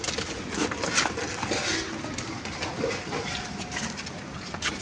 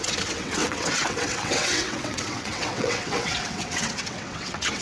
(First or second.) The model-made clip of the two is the second